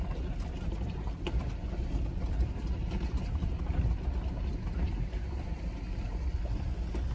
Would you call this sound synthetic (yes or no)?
no